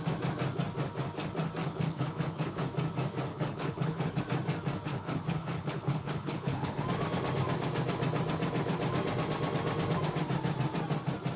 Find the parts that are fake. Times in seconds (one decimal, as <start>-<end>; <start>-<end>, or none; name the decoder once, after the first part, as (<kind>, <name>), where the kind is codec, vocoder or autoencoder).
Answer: 1.6-2.6 (codec, HILCodec); 3.3-4.2; 4.9-6.8